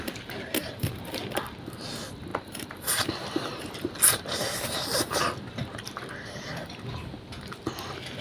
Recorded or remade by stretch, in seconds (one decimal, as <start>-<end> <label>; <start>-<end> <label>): 0.0-0.6 recorded; 0.6-1.2 remade; 1.2-2.3 recorded; 2.3-3.7 remade; 3.7-8.2 recorded